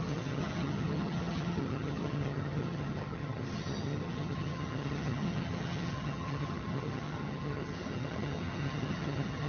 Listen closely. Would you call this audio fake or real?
fake